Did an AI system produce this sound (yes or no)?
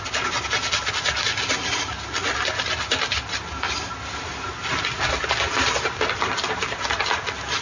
no